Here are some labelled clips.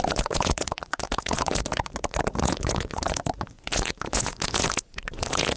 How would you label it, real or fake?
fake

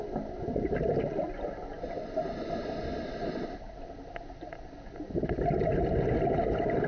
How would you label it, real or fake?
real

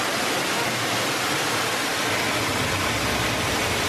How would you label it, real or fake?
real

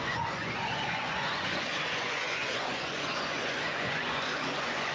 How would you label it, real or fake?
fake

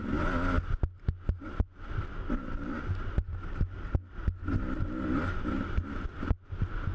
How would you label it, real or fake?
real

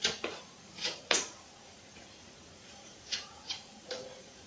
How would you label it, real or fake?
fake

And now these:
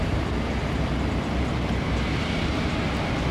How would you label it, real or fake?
real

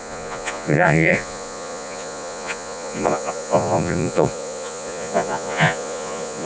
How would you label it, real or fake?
fake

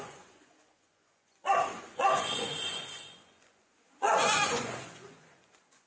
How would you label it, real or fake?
fake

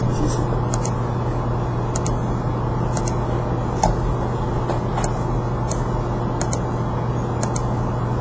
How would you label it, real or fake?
real